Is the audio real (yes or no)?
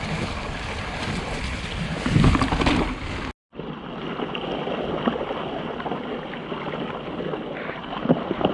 yes